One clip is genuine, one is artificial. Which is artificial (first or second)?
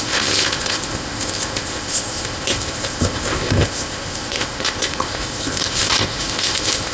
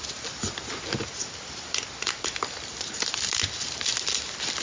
first